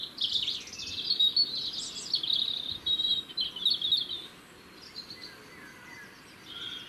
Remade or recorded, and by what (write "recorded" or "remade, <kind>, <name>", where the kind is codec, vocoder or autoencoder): recorded